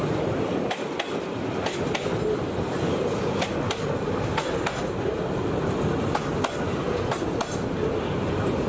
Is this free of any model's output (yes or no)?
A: yes